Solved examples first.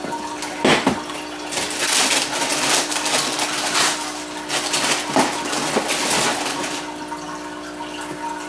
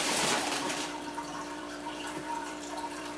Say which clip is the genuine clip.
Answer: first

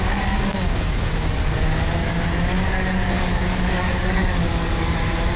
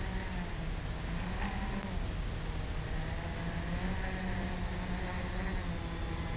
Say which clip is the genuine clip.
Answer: second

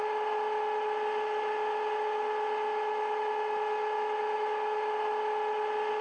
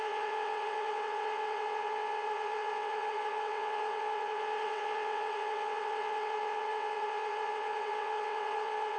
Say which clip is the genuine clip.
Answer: first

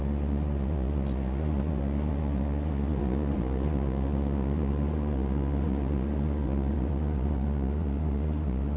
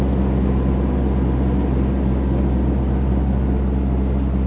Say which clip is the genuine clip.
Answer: second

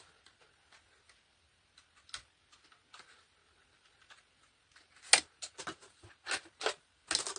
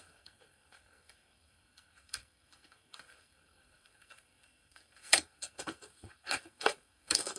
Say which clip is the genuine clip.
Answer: first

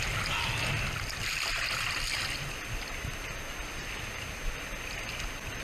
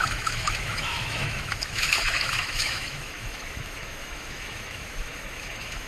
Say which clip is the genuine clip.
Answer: first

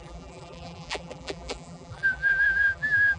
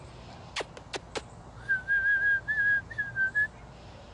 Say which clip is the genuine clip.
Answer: second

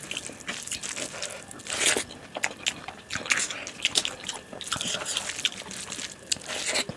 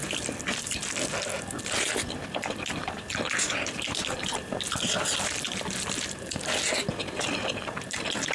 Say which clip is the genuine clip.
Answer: first